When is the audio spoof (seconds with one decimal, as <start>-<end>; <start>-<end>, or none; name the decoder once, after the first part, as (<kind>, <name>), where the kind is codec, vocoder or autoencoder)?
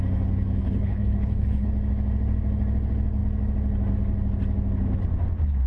0.6-1.7 (codec, HILCodec)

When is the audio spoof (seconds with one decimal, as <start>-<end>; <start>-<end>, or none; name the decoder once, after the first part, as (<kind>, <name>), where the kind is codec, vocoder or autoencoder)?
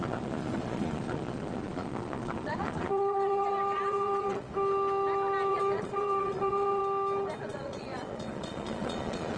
0.0-4.5 (vocoder, Vocos); 5.5-6.8; 7.4-9.4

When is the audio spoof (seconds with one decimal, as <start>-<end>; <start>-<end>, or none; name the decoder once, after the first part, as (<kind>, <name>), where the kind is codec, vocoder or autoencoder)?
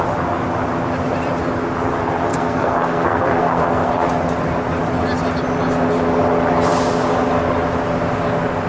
2.3-3.9 (codec, SNAC)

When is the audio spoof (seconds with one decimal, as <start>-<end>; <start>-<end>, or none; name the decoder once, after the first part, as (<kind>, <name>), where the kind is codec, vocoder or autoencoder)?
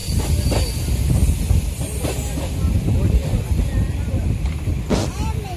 3.2-4.0 (vocoder, BigVGAN v2)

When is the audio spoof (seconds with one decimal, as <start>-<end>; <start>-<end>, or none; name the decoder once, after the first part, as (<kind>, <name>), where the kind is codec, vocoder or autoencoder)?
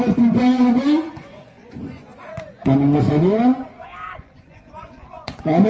0.0-5.7 (vocoder, Vocos)